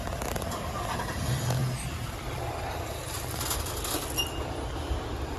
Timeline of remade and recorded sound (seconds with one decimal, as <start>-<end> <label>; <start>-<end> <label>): 0.0-5.4 recorded